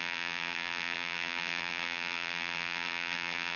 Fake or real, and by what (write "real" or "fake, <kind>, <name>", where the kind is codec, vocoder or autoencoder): fake, vocoder, BigVGAN v2